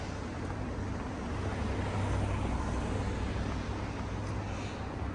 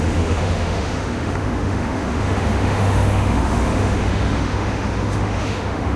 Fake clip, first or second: second